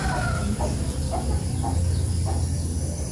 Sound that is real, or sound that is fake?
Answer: fake